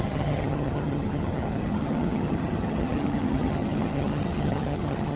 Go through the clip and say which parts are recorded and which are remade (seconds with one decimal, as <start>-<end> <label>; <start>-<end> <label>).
0.0-5.2 remade